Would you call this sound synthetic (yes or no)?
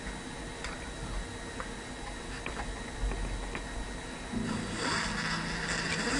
no